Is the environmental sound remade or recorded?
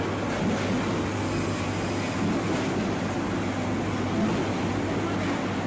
recorded